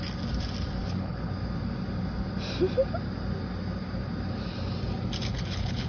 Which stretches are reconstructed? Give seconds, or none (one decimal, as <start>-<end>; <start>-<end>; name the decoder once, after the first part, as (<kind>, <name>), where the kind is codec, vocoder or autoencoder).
0.8-1.3 (codec, HILCodec); 5.3-5.9